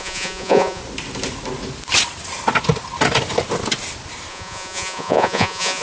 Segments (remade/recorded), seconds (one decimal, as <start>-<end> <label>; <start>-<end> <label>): 0.0-0.8 remade; 0.8-4.3 recorded; 4.3-5.8 remade